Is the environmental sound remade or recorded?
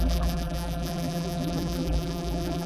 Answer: remade